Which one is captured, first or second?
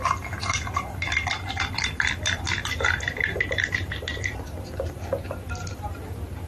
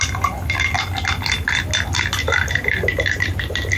second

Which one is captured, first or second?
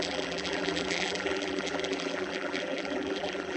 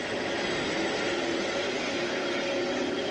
second